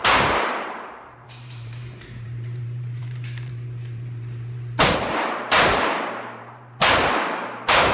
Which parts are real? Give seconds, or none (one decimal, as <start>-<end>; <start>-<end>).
none